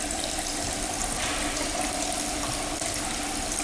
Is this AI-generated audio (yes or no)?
no